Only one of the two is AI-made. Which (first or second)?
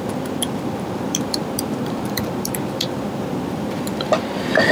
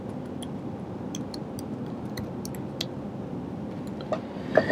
first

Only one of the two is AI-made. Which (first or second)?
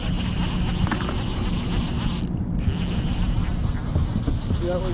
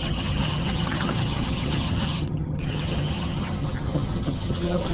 second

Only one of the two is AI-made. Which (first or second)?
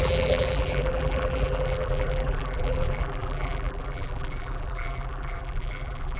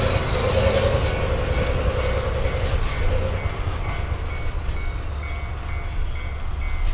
first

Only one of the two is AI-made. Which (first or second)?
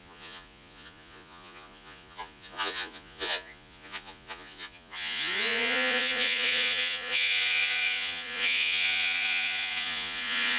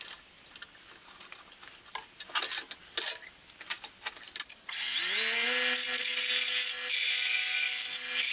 first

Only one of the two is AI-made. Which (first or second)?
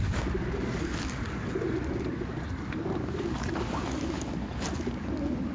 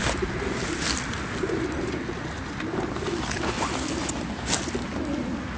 first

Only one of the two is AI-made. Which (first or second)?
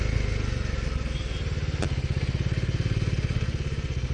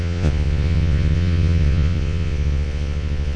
second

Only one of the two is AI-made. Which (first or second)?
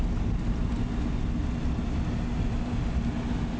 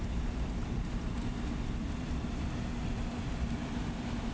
second